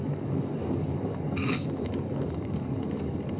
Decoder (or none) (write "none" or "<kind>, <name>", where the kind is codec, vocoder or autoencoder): codec, DAC